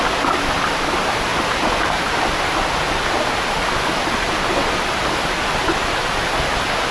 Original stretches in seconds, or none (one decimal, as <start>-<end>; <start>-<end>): 0.0-6.9